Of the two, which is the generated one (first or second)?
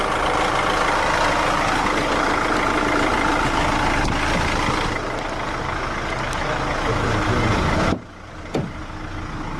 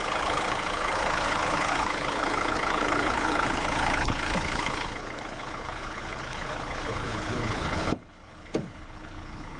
second